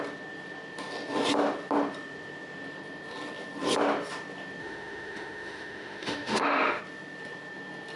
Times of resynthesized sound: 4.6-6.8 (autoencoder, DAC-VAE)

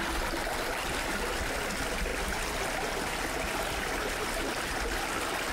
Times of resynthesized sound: none